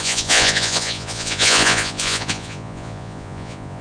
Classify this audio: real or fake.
fake